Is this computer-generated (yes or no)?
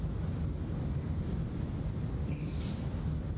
no